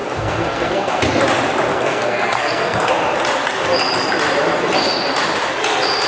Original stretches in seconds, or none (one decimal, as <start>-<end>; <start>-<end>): 1.0-1.7; 2.9-6.1